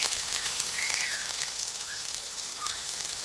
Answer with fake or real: fake